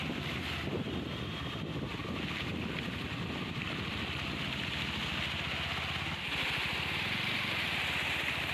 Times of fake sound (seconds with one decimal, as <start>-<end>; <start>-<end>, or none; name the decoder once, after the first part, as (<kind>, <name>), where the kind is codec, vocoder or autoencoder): none

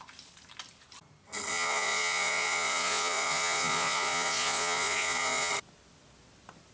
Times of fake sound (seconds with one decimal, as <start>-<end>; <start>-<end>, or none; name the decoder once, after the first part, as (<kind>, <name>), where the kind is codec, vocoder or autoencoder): 1.5-5.5 (vocoder, Vocos)

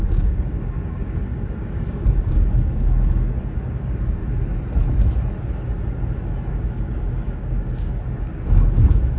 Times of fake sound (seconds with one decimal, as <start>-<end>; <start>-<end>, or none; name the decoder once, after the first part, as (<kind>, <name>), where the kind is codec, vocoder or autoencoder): 0.0-4.2 (codec, DAC); 6.5-9.2

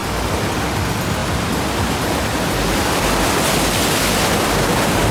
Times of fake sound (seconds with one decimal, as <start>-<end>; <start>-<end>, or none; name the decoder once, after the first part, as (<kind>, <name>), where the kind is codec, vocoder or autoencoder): 0.0-0.5 (vocoder, BigVGAN v2)

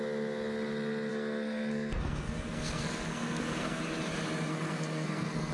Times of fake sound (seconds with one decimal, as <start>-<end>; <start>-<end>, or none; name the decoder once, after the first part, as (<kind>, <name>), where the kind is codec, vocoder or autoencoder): 1.1-3.8 (codec, SNAC); 4.5-5.5

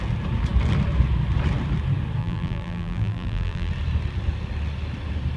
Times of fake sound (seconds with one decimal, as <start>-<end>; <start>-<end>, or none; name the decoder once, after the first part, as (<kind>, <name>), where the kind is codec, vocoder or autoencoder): 2.2-3.7 (vocoder, BigVGAN v2)